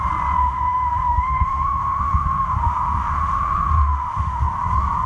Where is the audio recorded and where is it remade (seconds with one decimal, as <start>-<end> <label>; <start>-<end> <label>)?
0.0-0.4 recorded; 0.4-3.5 remade; 3.5-3.9 recorded; 3.9-4.4 remade; 4.4-5.1 recorded